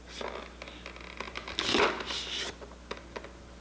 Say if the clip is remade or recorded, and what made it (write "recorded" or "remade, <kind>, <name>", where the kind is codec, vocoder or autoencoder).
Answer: recorded